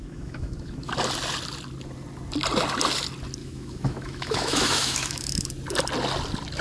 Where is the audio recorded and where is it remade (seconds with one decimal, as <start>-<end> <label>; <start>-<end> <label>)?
0.0-0.9 remade; 0.9-3.4 recorded; 3.4-5.5 remade; 5.5-6.6 recorded